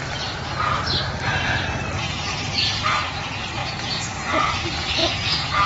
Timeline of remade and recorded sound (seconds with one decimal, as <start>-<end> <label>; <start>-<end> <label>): 0.0-3.6 recorded; 3.6-4.5 remade; 4.5-5.0 recorded; 5.0-5.7 remade